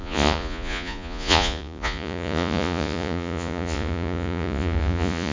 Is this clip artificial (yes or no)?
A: yes